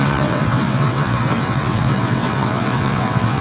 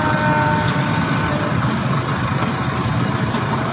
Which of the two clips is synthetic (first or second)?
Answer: first